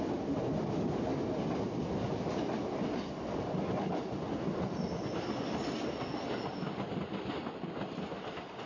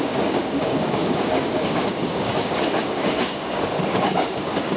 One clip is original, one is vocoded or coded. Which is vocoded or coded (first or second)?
second